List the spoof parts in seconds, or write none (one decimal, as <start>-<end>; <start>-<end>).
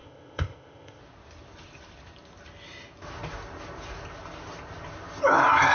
0.0-1.0